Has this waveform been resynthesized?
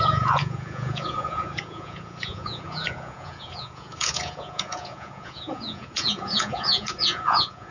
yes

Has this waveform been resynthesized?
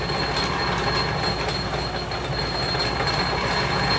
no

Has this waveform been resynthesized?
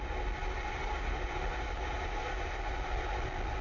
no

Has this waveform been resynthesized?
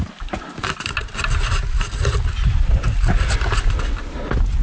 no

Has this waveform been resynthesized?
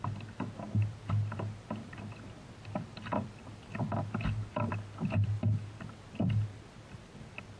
no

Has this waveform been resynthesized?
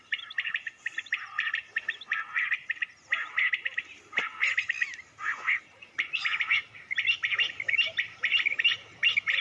no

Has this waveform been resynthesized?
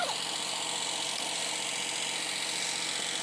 no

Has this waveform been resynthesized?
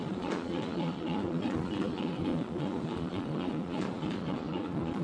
yes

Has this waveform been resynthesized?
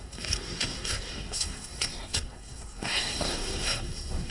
yes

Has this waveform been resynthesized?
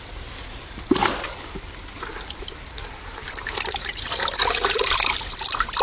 no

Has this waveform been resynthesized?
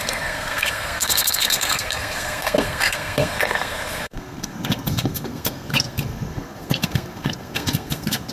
yes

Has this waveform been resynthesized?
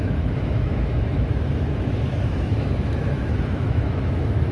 yes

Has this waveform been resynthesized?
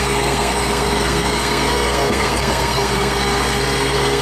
yes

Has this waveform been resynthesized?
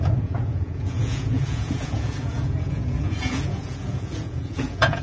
yes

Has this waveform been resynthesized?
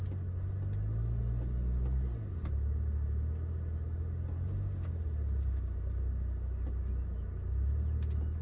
no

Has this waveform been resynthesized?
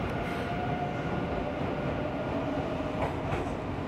no